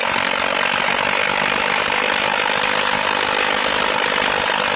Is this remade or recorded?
recorded